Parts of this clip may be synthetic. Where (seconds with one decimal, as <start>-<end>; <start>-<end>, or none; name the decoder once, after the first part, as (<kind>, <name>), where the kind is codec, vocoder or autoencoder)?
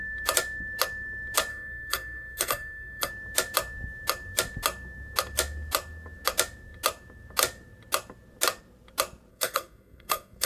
1.5-3.1 (codec, SNAC); 9.3-10.5